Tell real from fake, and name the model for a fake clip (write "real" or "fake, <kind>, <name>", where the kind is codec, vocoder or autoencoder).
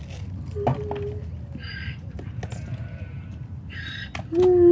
real